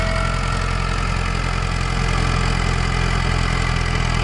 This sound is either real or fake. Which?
real